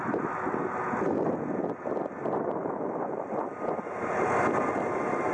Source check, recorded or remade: recorded